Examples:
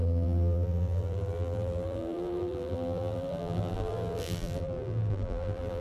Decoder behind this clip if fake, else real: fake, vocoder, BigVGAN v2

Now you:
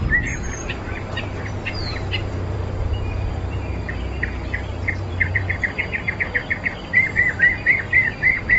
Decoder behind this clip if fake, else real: fake, vocoder, BigVGAN v2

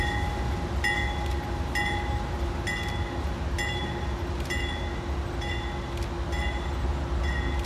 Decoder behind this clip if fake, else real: real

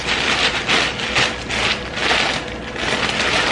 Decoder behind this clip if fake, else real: real